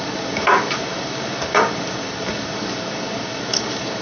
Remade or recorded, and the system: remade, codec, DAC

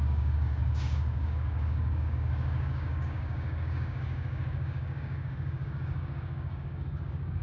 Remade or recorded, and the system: remade, codec, DAC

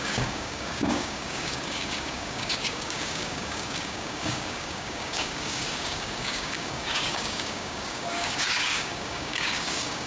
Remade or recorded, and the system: remade, codec, DAC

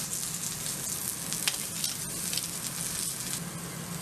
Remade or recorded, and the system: recorded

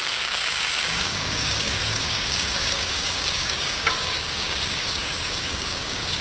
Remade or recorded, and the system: remade, codec, DAC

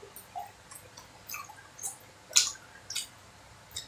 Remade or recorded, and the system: recorded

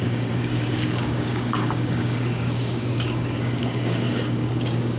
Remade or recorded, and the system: remade, codec, DAC